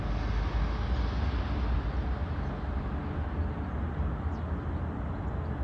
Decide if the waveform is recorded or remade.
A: recorded